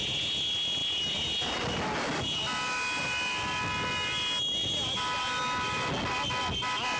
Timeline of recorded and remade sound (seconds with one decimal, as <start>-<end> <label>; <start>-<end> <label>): 0.0-7.0 recorded